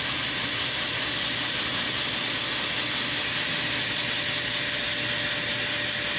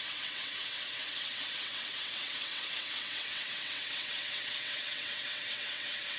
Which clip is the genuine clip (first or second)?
first